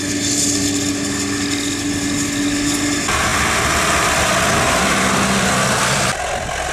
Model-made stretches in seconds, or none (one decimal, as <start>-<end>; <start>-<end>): none

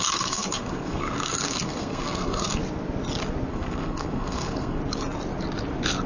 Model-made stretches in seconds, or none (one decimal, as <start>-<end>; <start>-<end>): 0.0-2.6; 3.5-4.8

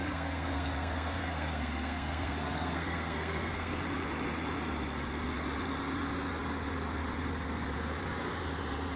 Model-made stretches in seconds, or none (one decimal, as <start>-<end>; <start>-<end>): 0.0-3.8

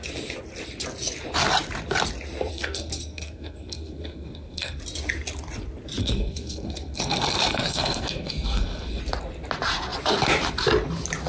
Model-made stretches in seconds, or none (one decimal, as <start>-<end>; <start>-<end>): 2.5-4.8; 6.0-9.0

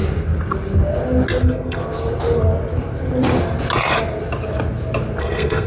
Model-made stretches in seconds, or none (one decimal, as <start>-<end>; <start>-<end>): 1.4-1.8; 5.2-5.7

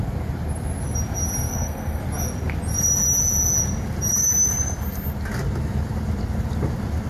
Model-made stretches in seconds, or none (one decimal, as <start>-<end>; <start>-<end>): 1.5-2.0

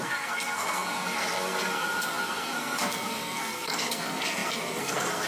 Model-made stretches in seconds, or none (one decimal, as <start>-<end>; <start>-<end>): 0.0-5.3

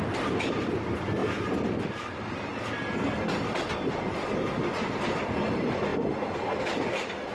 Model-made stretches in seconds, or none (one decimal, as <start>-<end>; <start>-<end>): none